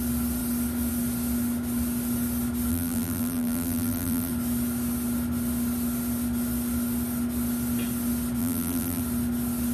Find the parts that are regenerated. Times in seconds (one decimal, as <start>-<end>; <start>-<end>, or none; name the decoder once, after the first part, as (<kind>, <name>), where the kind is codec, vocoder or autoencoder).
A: 2.7-4.3 (vocoder, BigVGAN v2); 8.4-9.0